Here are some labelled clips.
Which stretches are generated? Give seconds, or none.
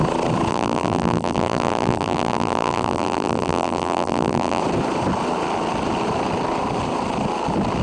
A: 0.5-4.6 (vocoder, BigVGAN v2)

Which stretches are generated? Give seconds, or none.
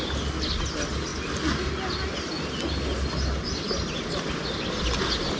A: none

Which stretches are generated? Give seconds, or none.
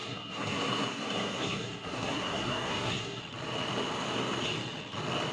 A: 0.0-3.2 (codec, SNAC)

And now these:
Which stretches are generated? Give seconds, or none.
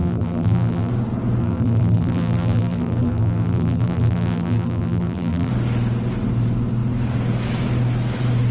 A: 0.0-0.9 (vocoder, BigVGAN v2); 1.4-5.5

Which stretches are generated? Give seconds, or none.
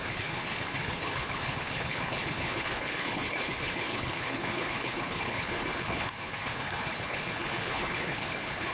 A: 0.0-8.7 (codec, HILCodec)